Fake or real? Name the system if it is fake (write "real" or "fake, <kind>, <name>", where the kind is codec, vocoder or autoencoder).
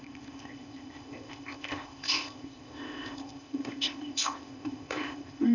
fake, codec, ZipCodec